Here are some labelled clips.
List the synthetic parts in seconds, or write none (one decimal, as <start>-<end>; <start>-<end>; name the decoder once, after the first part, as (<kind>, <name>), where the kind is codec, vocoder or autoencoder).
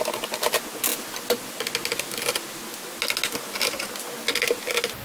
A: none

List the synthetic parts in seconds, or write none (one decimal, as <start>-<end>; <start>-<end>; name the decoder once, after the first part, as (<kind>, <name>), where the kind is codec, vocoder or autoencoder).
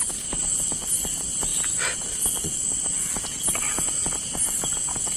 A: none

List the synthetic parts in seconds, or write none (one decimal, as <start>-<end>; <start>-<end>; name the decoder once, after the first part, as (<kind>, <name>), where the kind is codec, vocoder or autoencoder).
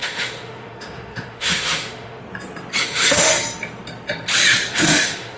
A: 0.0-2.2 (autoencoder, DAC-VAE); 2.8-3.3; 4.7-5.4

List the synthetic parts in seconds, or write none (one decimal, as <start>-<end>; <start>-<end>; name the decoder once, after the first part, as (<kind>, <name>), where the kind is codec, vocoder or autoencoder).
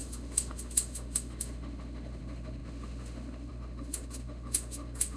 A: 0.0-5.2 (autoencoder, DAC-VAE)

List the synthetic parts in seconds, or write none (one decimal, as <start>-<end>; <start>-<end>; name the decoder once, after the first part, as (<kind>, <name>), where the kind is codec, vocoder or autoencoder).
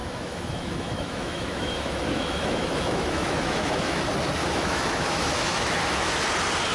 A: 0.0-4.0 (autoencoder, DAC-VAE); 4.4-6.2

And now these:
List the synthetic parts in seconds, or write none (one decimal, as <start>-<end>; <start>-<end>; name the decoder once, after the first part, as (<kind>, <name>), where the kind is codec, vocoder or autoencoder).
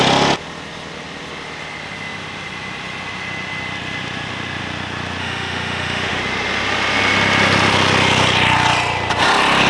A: 5.2-6.2 (autoencoder, DAC-VAE)